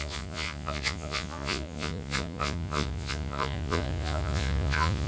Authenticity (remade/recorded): remade